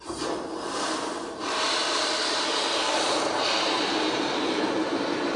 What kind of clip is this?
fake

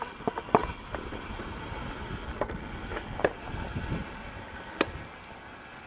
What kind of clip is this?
real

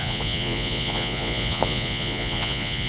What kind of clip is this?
fake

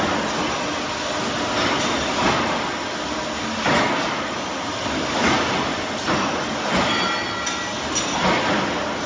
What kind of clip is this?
real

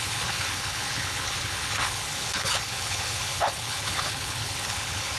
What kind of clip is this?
fake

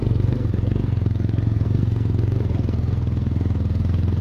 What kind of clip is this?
fake